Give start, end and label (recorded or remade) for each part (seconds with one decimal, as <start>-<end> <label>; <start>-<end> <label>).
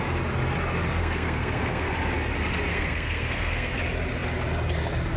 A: 0.0-1.0 recorded; 1.0-1.9 remade; 1.9-2.7 recorded; 2.7-3.8 remade; 3.8-5.2 recorded